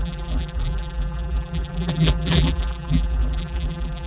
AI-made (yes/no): yes